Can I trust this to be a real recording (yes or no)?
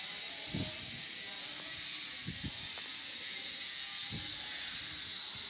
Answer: yes